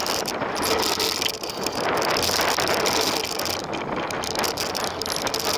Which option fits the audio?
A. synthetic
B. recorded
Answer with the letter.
B